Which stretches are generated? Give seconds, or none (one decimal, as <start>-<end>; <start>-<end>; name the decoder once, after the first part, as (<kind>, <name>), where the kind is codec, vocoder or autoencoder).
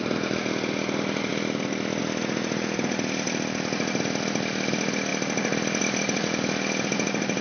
none